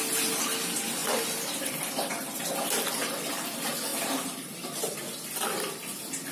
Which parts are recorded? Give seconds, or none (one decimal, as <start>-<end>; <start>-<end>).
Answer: 0.0-1.0; 2.5-6.3